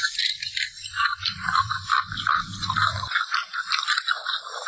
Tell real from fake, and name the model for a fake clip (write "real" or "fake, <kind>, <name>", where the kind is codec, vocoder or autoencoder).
fake, vocoder, BigVGAN v2